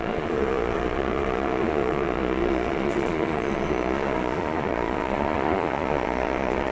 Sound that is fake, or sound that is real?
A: fake